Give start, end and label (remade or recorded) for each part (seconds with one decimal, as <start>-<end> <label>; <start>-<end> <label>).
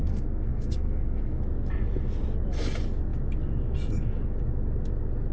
0.0-1.4 remade; 1.4-5.3 recorded